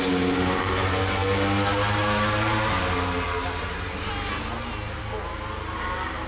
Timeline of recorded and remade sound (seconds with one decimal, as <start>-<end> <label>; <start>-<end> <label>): 0.0-6.3 recorded